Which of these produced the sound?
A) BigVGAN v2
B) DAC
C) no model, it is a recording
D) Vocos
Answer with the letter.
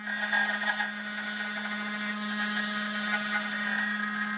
C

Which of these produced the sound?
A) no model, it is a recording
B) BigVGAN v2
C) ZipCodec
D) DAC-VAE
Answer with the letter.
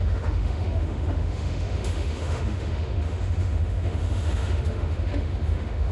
D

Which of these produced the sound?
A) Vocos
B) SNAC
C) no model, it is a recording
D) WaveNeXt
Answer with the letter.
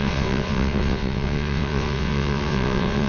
D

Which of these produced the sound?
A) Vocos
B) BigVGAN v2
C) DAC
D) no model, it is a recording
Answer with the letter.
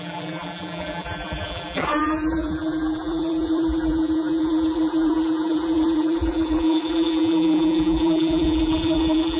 B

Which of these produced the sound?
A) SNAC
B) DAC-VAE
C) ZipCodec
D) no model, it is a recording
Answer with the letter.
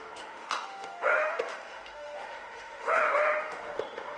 B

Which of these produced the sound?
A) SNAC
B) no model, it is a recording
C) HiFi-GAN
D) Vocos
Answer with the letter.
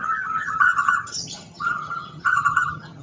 C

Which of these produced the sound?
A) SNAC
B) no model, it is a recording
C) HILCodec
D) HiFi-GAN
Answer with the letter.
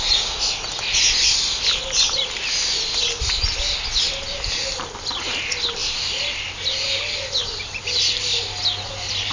B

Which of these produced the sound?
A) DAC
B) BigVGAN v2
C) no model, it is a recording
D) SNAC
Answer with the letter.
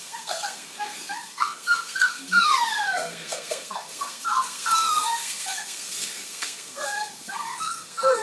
D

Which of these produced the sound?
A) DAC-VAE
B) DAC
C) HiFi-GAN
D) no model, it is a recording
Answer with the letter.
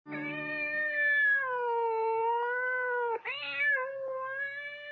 D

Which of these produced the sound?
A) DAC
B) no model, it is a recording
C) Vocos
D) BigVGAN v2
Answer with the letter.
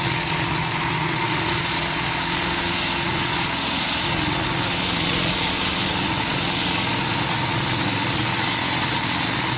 C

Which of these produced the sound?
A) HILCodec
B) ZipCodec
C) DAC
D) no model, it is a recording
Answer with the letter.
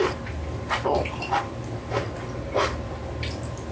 D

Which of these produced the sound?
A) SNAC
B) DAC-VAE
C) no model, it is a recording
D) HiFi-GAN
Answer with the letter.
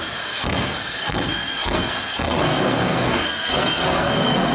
A